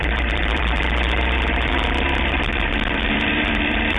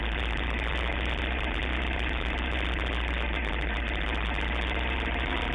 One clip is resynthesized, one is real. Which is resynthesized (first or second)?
first